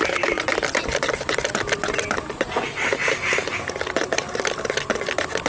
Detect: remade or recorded recorded